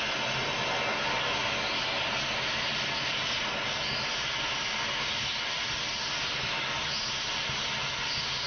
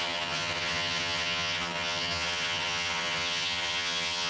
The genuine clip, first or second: first